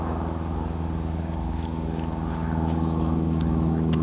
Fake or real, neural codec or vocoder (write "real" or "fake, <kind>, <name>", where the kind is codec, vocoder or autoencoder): fake, codec, DAC